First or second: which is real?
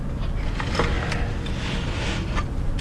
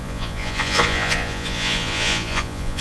first